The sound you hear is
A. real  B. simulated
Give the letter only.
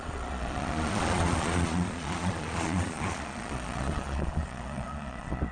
B